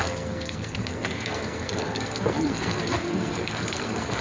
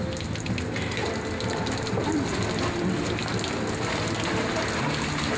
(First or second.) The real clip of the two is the second